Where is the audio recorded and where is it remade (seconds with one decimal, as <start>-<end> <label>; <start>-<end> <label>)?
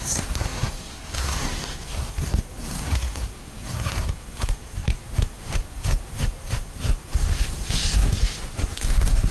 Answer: 0.0-9.3 remade